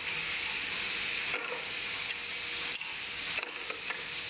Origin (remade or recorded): recorded